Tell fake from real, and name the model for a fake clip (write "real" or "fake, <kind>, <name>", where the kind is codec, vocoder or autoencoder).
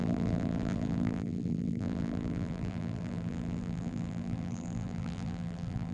fake, vocoder, BigVGAN v2